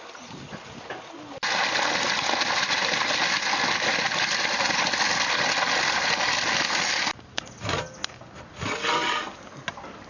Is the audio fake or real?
real